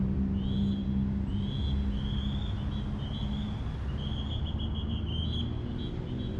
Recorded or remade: recorded